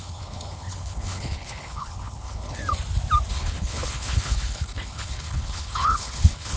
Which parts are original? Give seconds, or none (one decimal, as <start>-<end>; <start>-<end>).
2.6-3.3